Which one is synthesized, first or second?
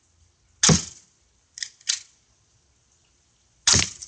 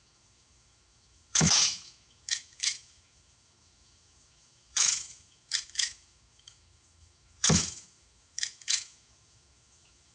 second